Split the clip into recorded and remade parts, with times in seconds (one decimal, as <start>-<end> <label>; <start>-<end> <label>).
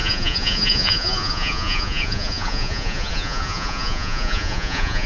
0.0-5.1 remade